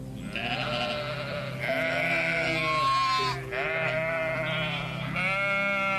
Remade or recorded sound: recorded